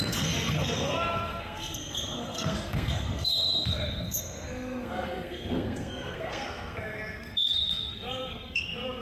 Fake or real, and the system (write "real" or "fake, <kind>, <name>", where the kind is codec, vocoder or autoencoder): fake, codec, SNAC